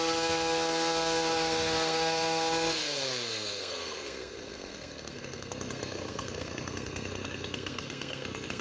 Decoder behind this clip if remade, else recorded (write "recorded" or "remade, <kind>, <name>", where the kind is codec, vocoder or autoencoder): remade, codec, SNAC